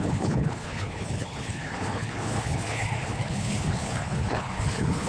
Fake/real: fake